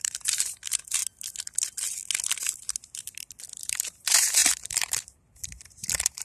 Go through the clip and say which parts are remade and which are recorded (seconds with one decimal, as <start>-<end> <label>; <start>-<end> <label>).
0.0-1.0 remade; 1.0-3.6 recorded; 3.6-6.2 remade